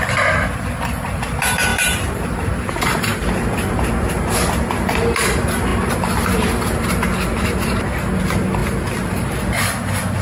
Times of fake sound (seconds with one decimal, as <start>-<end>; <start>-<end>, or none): 1.7-2.5; 8.6-9.4